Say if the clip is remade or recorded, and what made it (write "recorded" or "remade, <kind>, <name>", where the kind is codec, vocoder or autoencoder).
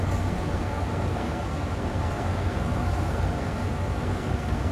remade, codec, SNAC